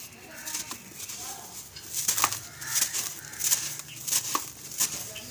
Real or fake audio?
real